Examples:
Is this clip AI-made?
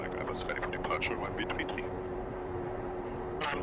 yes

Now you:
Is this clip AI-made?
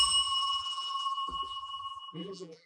yes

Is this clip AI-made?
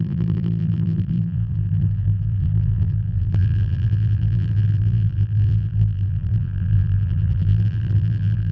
yes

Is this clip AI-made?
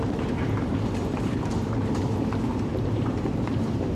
yes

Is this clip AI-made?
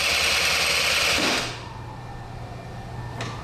no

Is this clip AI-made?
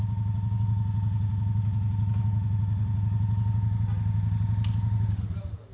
no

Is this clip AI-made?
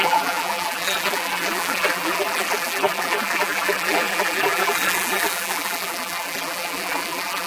yes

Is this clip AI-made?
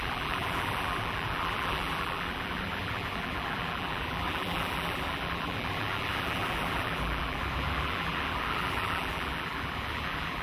yes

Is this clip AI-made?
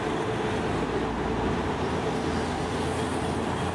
yes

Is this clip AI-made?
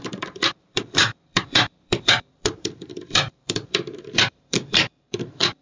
yes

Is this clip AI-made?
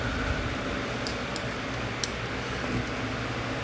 no